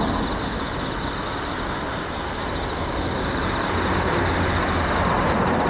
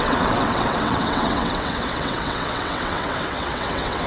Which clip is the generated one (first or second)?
second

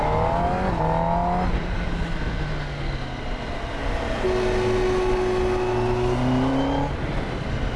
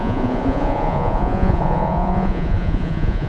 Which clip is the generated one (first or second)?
second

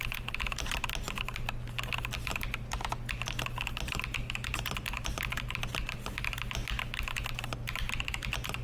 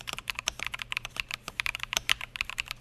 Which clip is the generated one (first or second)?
second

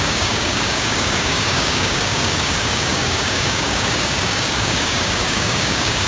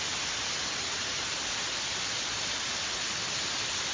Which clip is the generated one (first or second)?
first